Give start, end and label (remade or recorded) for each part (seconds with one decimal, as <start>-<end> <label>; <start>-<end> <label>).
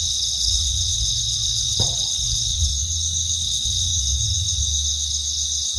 0.0-2.7 remade; 2.7-3.4 recorded; 3.4-3.9 remade; 3.9-5.8 recorded